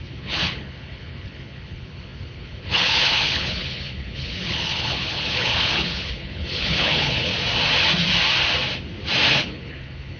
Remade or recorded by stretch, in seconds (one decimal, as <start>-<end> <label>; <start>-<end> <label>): 0.0-7.3 remade; 7.3-9.3 recorded; 9.3-10.2 remade